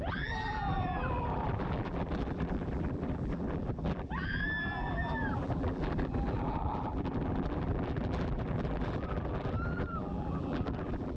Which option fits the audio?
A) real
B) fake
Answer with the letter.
B